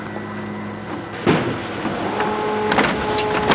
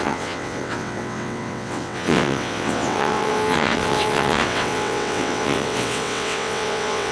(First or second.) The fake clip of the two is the second